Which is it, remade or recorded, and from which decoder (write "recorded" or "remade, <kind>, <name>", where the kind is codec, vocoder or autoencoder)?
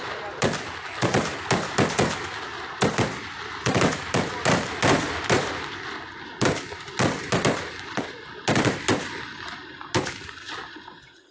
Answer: recorded